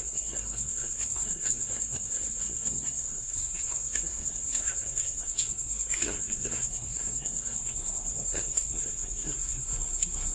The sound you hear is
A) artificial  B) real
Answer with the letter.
A